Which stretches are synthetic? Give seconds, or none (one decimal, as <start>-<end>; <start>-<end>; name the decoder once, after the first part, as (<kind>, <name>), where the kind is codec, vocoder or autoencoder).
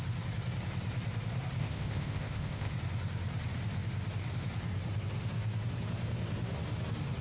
1.6-2.7 (codec, ZipCodec)